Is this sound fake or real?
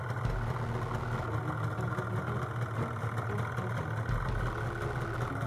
real